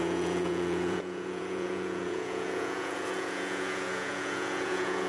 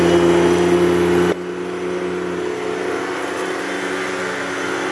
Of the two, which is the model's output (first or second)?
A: first